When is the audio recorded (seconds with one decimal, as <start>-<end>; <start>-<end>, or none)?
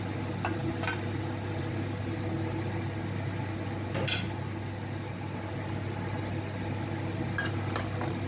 0.0-8.3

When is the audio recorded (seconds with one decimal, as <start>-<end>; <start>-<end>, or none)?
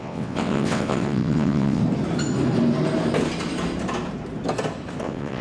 1.8-5.0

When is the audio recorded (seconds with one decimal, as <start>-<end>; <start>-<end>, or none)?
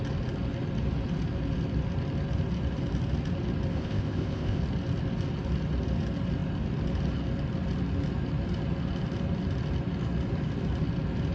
0.0-3.7; 4.6-11.3